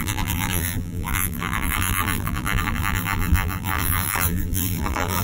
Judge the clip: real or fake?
fake